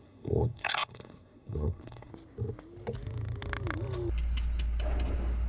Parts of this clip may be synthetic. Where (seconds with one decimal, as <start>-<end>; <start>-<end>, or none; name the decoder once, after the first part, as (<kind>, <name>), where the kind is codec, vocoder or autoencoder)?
0.0-2.1 (codec, SNAC)